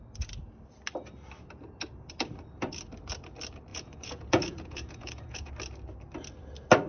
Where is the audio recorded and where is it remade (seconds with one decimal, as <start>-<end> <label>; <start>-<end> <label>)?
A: 0.0-3.7 recorded; 3.7-5.5 remade; 5.5-6.9 recorded